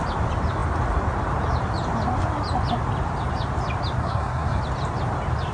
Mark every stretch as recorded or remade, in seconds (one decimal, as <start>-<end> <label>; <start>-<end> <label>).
0.0-4.0 recorded; 4.0-4.6 remade; 4.6-5.5 recorded